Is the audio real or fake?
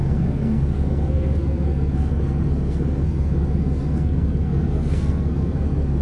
fake